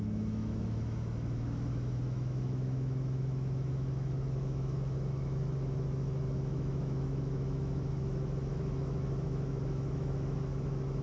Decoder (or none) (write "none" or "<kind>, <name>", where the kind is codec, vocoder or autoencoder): autoencoder, DAC-VAE